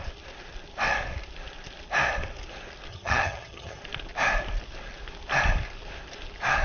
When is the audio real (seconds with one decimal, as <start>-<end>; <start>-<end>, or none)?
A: 0.0-2.9; 3.8-6.6